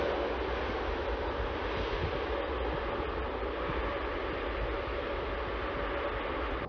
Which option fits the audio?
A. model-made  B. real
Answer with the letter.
B